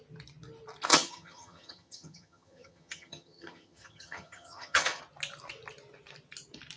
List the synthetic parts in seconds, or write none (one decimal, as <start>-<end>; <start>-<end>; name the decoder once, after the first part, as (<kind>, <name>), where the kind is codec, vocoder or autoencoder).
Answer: 0.9-5.0 (vocoder, HiFi-GAN)